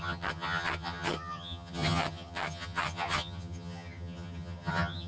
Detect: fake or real fake